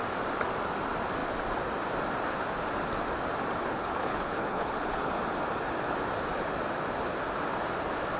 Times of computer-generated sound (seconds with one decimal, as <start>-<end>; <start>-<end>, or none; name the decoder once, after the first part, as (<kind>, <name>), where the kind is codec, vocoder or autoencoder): 3.6-5.1 (codec, HILCodec)